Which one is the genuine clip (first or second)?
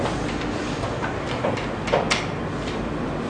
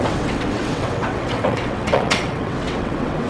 first